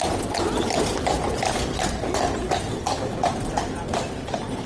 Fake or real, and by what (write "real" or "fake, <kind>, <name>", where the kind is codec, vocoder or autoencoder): real